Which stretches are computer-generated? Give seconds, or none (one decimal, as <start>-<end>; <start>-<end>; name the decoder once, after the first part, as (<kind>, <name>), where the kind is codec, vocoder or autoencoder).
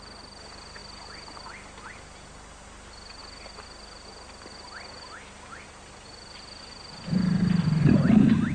none